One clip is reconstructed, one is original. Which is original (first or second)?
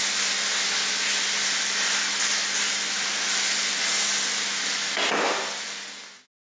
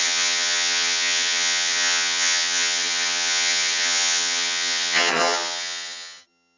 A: first